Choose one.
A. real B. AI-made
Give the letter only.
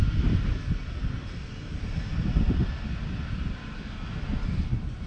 A